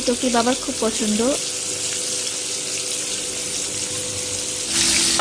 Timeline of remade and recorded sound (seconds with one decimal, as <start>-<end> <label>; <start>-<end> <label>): 0.0-5.2 recorded